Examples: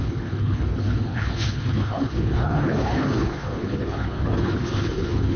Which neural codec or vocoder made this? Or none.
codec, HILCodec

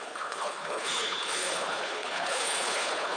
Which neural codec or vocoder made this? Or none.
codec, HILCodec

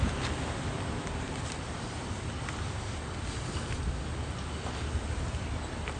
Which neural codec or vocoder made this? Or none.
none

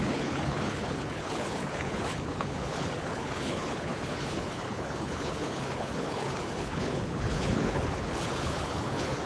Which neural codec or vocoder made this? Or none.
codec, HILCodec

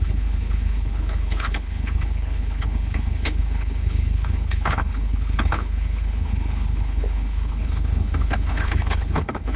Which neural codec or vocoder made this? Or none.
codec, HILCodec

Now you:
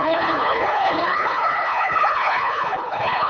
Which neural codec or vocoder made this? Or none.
codec, HILCodec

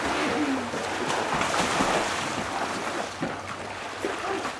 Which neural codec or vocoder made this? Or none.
none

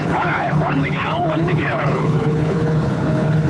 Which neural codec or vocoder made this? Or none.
codec, HILCodec